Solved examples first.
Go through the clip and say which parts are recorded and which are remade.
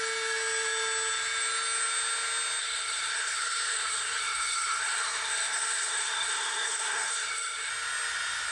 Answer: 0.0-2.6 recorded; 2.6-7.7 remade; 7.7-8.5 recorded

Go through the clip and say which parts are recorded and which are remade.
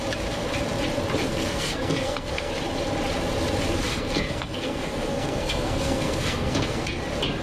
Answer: 0.0-1.3 recorded; 1.3-2.5 remade; 2.5-3.9 recorded; 3.9-7.0 remade; 7.0-7.4 recorded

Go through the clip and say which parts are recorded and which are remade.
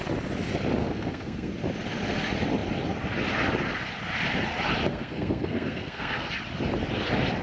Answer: 0.0-0.8 recorded; 0.8-1.5 remade; 1.5-4.9 recorded; 4.9-6.3 remade; 6.3-7.4 recorded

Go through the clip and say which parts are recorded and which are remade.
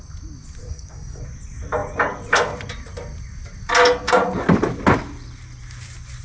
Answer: 0.0-0.6 recorded; 0.6-1.2 remade; 1.2-6.2 recorded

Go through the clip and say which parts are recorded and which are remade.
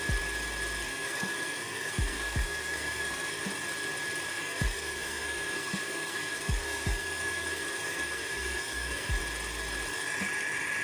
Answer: 0.0-0.9 recorded; 0.9-3.4 remade; 3.4-4.3 recorded; 4.3-9.1 remade; 9.1-10.8 recorded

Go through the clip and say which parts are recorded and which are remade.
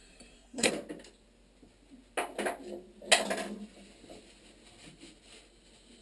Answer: 0.0-0.7 remade; 0.7-6.0 recorded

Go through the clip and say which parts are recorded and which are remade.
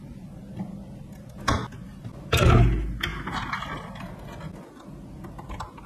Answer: 0.0-5.9 recorded